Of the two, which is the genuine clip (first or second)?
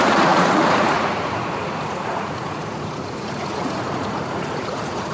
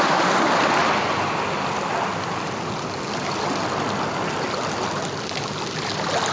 second